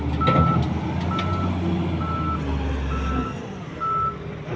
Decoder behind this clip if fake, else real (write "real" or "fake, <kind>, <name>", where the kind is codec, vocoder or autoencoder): real